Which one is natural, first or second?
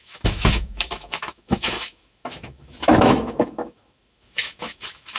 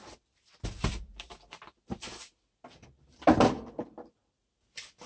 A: second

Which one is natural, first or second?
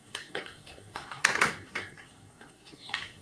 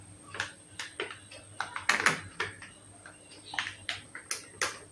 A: second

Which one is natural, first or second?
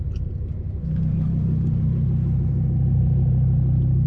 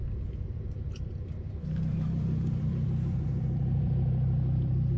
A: first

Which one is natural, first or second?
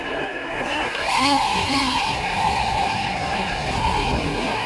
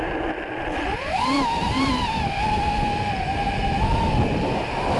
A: second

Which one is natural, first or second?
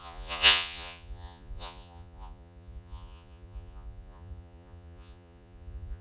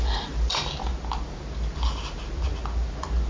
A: second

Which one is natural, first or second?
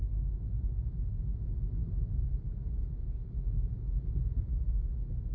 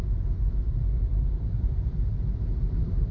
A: first